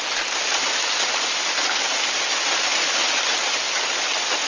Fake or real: real